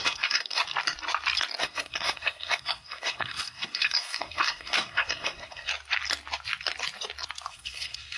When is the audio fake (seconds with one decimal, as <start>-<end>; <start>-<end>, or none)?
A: 0.0-0.6; 1.6-5.7; 7.5-8.2